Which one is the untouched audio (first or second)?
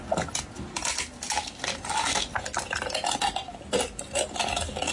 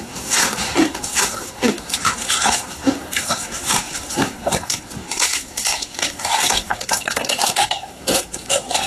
first